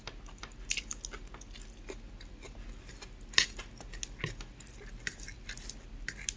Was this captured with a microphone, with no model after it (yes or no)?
yes